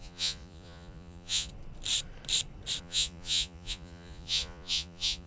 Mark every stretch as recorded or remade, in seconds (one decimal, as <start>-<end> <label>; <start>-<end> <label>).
0.0-1.5 remade; 1.5-2.8 recorded; 2.8-5.3 remade

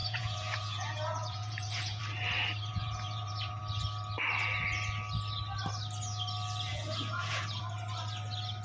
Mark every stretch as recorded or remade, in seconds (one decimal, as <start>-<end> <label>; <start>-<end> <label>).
0.0-2.0 remade; 2.0-2.7 recorded; 2.7-3.6 remade; 3.6-6.7 recorded; 6.7-7.6 remade; 7.6-8.6 recorded

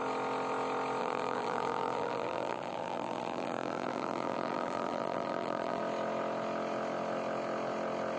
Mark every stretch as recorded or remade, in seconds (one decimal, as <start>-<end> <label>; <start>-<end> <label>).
0.0-1.0 recorded; 1.0-5.8 remade; 5.8-8.2 recorded

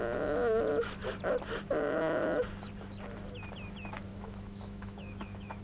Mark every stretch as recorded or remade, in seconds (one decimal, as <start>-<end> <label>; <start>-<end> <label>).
0.0-4.1 recorded; 4.1-5.6 remade